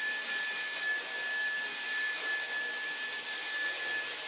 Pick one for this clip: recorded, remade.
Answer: recorded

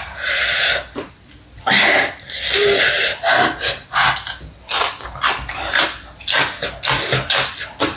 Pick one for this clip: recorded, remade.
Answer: recorded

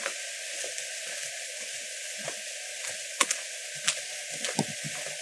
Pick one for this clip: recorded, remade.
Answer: recorded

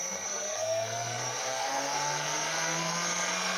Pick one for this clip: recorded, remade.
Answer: remade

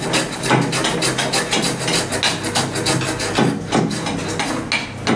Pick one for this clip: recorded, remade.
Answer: recorded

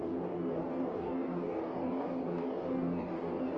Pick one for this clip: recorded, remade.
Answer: remade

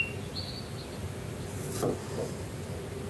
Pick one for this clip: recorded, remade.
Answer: recorded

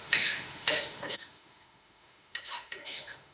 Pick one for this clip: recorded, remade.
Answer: remade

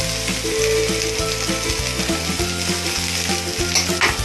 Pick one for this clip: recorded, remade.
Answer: recorded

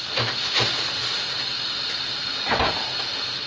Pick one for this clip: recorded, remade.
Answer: recorded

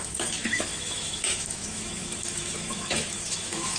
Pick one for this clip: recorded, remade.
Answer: remade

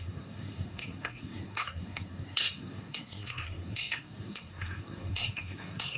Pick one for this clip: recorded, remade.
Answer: remade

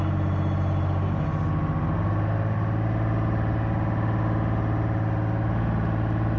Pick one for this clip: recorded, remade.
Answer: recorded